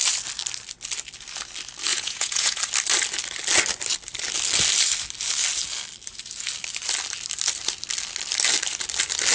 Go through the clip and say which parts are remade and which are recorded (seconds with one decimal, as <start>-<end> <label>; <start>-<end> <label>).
0.0-1.9 recorded; 1.9-2.6 remade; 2.6-9.3 recorded